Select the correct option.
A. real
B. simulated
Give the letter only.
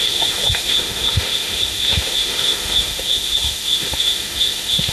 B